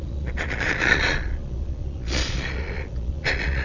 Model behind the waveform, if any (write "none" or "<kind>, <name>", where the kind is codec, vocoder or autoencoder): vocoder, Vocos